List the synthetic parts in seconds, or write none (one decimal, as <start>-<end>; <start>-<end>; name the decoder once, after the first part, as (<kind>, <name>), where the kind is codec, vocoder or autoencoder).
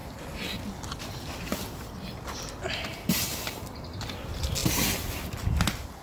2.9-4.0 (vocoder, BigVGAN v2)